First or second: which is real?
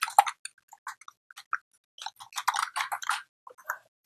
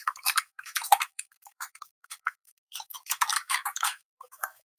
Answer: first